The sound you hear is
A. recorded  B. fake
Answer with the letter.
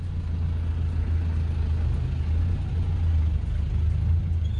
A